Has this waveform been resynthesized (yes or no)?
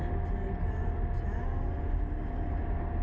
no